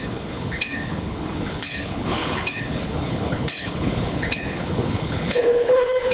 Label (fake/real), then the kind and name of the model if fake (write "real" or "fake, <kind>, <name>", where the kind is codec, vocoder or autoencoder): fake, codec, HILCodec